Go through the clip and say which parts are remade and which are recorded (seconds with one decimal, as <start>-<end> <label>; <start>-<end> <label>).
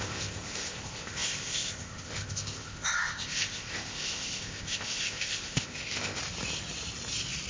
0.0-6.2 remade; 6.2-7.5 recorded